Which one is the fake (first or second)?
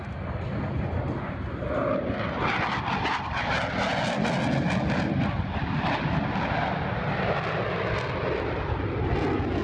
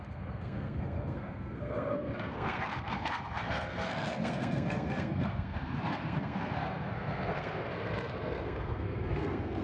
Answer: second